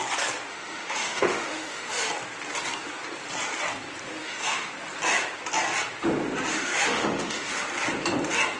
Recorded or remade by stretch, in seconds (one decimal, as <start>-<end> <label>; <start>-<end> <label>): 0.0-0.5 recorded; 0.5-2.1 remade; 2.1-4.2 recorded; 4.2-4.7 remade; 4.7-6.5 recorded; 6.5-7.5 remade; 7.5-8.6 recorded